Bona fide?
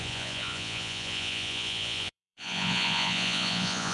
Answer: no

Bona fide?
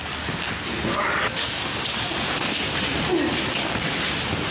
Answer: yes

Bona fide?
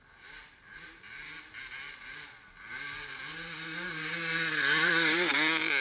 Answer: yes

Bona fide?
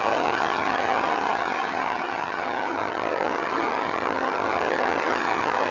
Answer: no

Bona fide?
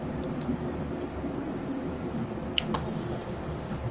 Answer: yes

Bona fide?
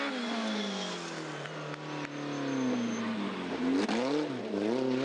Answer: yes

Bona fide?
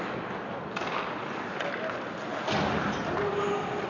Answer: yes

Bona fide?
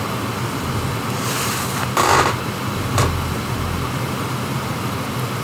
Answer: yes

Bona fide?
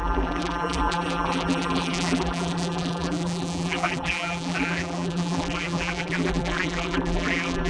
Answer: no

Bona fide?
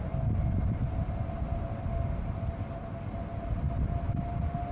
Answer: yes